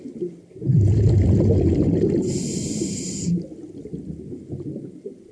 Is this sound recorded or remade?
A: recorded